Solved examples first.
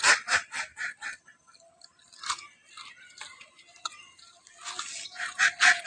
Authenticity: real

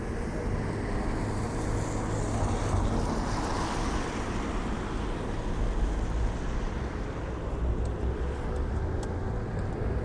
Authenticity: real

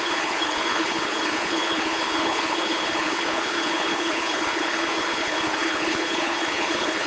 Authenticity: fake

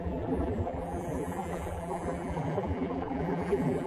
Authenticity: fake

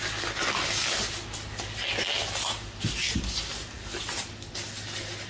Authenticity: real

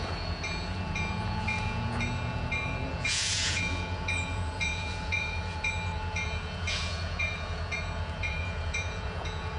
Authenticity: fake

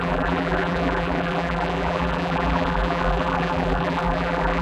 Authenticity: fake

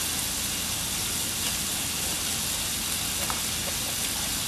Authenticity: real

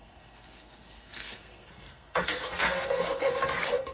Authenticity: fake